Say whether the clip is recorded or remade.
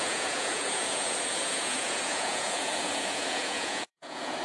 remade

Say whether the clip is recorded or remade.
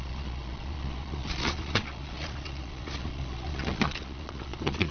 remade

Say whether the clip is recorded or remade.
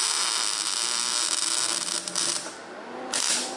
recorded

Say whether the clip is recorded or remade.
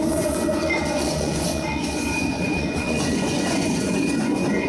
remade